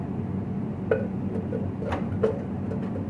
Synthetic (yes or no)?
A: no